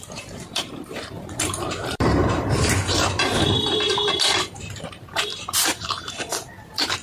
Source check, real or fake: fake